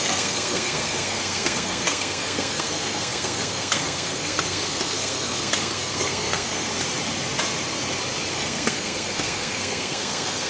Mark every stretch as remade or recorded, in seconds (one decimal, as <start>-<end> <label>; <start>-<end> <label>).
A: 0.0-6.7 remade; 6.7-8.3 recorded; 8.3-10.5 remade